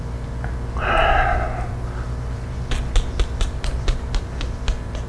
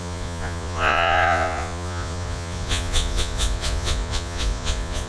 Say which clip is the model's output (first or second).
second